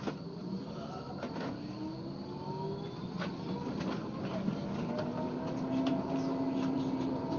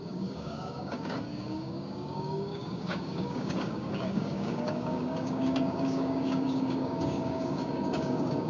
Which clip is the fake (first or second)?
second